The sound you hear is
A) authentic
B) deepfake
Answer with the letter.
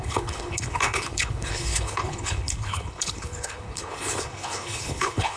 B